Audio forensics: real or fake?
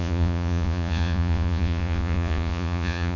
fake